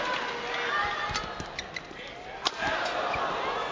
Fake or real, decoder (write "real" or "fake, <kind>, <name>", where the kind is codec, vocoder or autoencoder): real